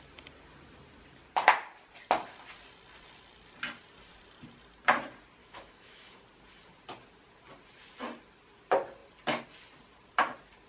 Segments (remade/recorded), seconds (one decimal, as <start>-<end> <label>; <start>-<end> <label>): 0.0-5.4 recorded; 5.4-6.2 remade; 6.2-10.7 recorded